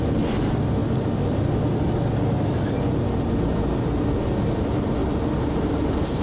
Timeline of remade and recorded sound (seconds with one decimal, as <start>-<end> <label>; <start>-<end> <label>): 0.0-5.0 recorded; 5.0-6.2 remade